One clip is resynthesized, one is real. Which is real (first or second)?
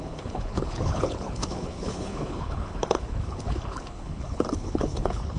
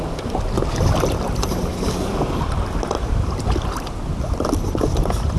second